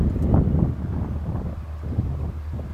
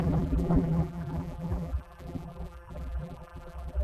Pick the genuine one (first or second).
first